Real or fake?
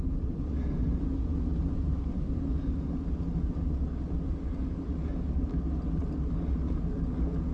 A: real